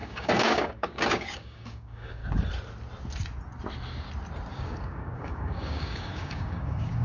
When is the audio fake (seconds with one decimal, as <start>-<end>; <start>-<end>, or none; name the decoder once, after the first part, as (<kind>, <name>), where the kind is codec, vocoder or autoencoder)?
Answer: 0.0-2.2 (codec, DAC); 4.5-7.0